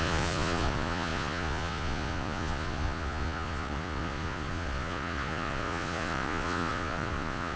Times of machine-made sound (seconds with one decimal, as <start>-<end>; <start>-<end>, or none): 0.0-7.6